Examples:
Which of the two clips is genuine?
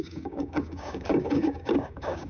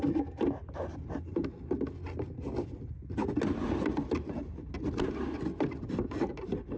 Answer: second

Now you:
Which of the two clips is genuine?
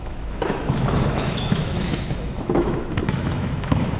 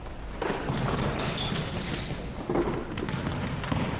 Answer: second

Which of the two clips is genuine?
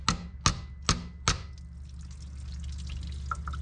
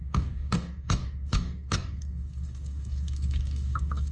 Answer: first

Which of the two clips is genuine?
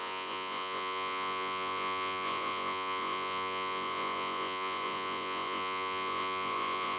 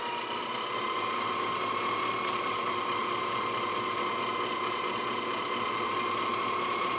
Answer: second